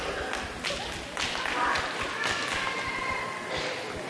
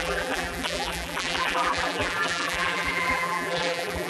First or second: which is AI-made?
second